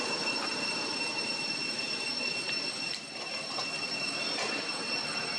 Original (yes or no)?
yes